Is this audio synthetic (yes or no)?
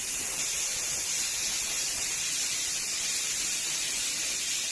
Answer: no